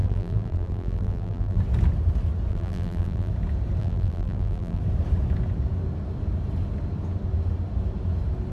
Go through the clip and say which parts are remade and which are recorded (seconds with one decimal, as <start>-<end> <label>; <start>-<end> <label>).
0.0-1.6 remade; 1.6-2.5 recorded; 2.5-3.3 remade; 3.3-3.8 recorded; 3.8-4.8 remade; 4.8-8.5 recorded